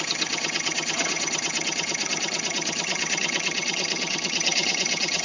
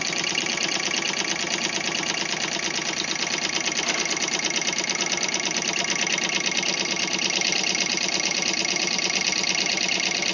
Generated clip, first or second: first